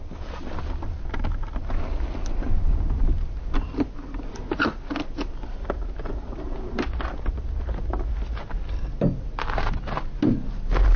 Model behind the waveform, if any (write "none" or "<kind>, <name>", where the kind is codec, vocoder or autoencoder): none